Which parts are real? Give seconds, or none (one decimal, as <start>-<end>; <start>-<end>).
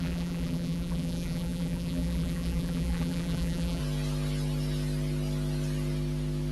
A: 3.8-6.5